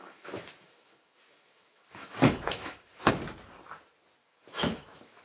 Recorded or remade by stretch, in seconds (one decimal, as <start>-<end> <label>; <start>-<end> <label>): 0.0-3.1 remade; 3.1-4.2 recorded; 4.2-5.2 remade